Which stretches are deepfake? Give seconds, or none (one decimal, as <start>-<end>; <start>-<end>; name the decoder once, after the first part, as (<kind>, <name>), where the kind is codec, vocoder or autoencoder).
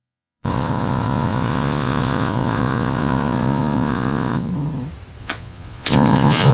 0.0-4.5 (vocoder, Vocos); 5.2-6.5